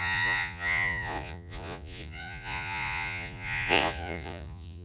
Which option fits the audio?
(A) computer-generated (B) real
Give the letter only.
A